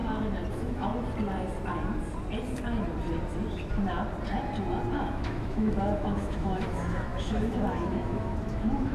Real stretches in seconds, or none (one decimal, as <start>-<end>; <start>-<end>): 0.0-0.5; 0.9-5.0